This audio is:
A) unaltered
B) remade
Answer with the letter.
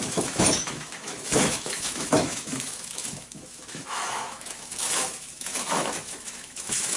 B